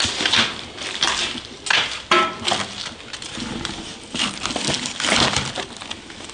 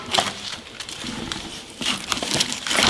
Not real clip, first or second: second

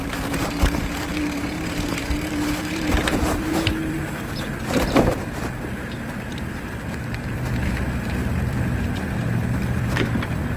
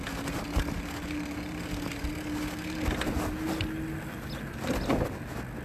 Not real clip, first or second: first